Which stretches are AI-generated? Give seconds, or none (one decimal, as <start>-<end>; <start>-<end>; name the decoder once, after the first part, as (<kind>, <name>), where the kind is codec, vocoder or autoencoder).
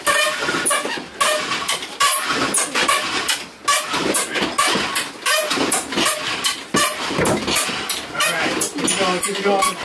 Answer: none